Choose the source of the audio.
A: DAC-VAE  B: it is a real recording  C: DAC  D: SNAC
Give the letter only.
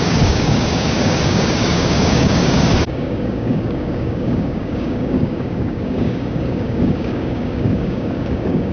C